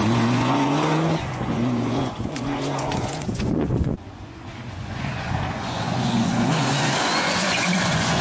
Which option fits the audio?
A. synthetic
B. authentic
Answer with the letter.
A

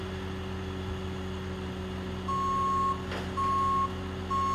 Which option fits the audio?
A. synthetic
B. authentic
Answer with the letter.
B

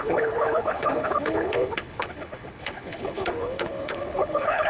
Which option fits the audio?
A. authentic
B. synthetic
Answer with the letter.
B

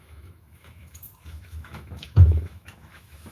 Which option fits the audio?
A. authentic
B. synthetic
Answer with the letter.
B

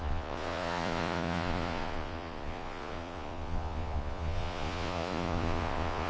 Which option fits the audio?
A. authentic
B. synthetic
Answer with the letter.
B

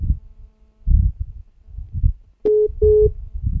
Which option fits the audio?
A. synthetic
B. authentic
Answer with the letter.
B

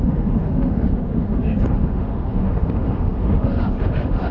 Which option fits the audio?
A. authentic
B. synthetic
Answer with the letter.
B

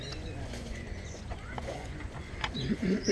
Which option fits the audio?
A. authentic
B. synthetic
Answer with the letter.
B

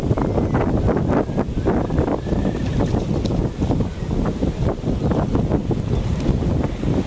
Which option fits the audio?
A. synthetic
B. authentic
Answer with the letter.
B